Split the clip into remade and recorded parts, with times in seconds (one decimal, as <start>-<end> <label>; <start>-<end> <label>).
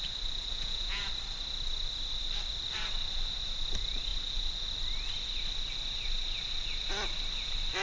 0.0-0.5 recorded; 0.5-1.1 remade; 1.1-7.8 recorded